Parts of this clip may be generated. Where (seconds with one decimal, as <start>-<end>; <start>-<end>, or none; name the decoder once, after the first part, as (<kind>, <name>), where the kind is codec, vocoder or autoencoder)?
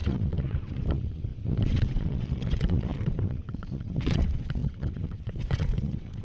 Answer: 0.0-6.2 (vocoder, WaveNeXt)